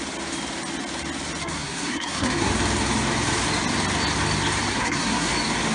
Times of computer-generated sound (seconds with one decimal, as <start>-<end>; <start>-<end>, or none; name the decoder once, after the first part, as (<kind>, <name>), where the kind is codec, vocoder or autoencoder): 1.4-2.5 (codec, SNAC); 4.7-5.3